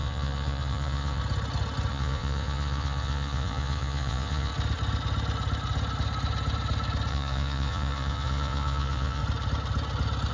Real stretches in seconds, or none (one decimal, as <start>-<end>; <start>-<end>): 1.2-1.9; 4.5-7.1; 9.2-10.3